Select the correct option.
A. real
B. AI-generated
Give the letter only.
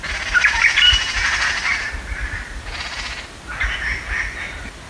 A